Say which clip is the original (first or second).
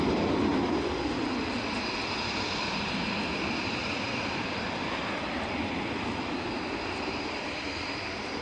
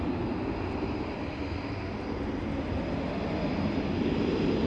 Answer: second